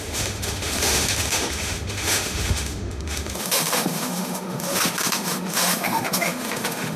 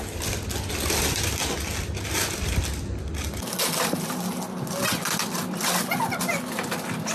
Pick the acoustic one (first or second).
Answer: second